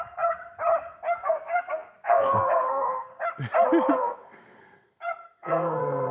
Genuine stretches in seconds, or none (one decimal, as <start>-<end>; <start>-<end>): 0.4-1.1; 3.1-3.9